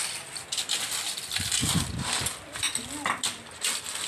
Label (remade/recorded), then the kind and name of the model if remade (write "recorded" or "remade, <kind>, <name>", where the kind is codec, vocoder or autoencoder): recorded